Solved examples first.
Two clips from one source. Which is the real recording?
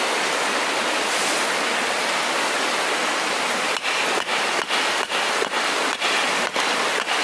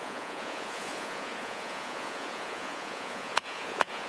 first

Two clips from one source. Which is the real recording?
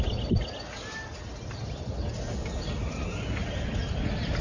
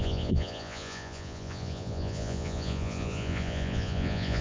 first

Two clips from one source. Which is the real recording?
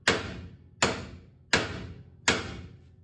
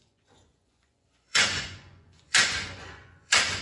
first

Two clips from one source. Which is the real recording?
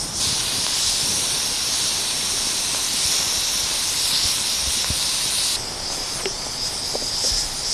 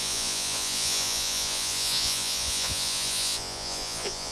first